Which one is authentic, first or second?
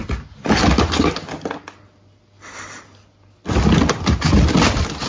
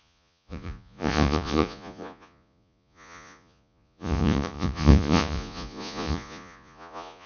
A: first